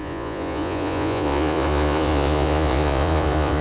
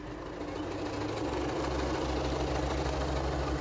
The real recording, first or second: second